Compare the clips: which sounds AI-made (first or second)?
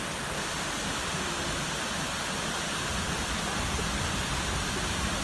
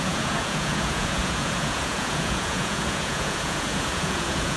second